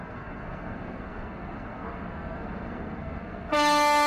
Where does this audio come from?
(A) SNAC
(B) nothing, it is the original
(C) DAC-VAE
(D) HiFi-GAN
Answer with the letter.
A